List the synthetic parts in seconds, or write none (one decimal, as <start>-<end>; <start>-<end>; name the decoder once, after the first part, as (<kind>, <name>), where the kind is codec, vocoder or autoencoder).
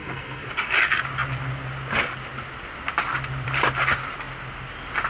0.0-0.5 (codec, SNAC)